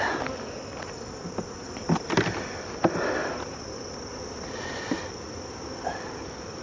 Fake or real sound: real